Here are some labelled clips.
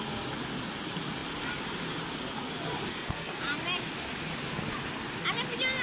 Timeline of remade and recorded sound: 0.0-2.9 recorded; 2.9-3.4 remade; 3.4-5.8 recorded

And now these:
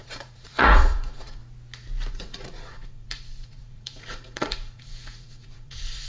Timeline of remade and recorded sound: 0.0-1.4 remade; 1.4-2.1 recorded; 2.1-6.1 remade

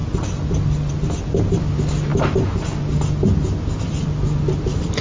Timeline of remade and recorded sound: 0.0-5.0 recorded

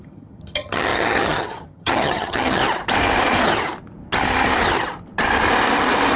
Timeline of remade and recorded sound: 0.0-2.6 remade; 2.6-6.2 recorded